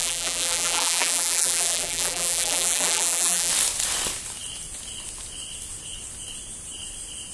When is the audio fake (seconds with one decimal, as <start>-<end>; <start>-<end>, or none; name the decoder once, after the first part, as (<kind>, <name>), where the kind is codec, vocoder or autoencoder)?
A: 0.0-3.5 (vocoder, BigVGAN v2)